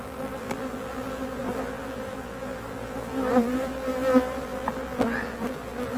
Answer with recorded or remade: remade